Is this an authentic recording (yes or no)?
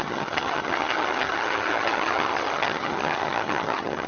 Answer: no